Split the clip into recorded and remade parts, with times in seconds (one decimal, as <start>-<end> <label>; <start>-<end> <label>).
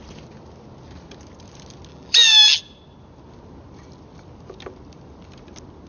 0.0-1.9 recorded; 1.9-2.6 remade; 2.6-5.9 recorded